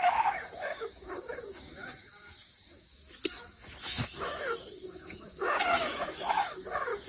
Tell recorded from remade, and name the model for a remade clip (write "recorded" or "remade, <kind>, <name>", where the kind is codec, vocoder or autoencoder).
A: remade, autoencoder, DAC-VAE